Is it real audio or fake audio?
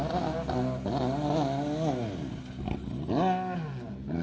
real